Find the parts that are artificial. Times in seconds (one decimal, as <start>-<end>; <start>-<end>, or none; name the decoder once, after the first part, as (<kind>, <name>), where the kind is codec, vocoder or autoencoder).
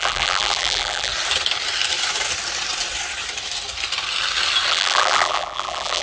0.0-1.1 (vocoder, BigVGAN v2); 4.7-6.0